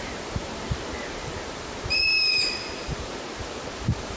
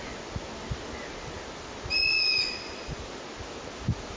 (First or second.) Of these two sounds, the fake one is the first